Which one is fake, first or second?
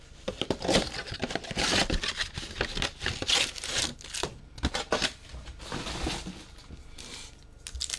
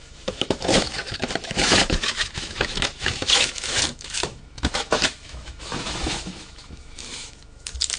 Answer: second